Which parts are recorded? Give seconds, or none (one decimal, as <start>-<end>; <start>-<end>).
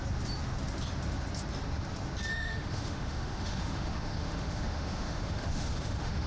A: 0.0-2.3